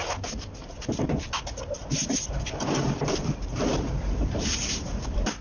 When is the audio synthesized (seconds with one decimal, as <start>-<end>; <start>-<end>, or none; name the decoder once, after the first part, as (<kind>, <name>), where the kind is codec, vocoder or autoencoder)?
none